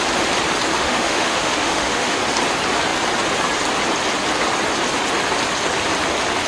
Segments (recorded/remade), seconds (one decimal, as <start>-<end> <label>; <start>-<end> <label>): 0.0-0.7 recorded; 0.7-2.2 remade; 2.2-6.5 recorded

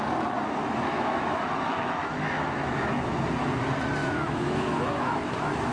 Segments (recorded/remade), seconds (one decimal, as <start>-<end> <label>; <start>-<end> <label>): 0.0-0.6 recorded; 0.6-3.2 remade; 3.2-4.0 recorded; 4.0-5.7 remade

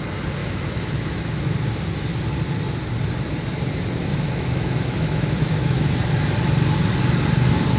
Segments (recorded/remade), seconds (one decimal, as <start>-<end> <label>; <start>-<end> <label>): 0.0-0.4 recorded; 0.4-1.3 remade; 1.3-4.1 recorded; 4.1-5.8 remade; 5.8-7.8 recorded